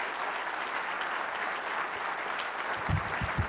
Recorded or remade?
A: recorded